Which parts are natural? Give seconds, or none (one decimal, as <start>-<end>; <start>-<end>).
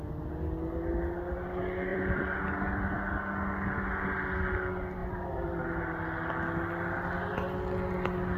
0.0-1.9; 2.4-5.0; 5.8-8.4